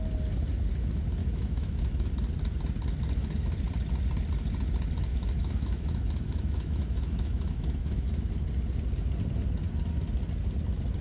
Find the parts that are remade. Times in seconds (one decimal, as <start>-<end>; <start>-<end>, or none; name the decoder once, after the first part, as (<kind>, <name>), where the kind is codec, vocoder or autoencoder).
1.2-2.1 (autoencoder, DAC-VAE); 5.1-8.3